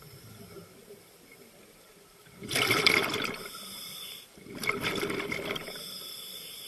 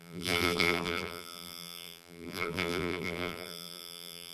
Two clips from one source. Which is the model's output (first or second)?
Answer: second